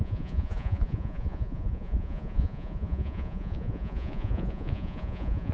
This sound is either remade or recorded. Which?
remade